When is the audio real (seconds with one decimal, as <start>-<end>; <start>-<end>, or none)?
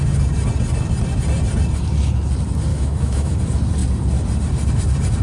0.0-2.7; 3.4-5.2